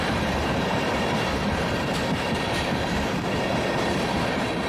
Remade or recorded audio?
remade